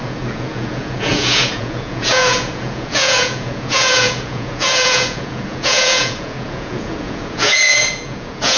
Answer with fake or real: fake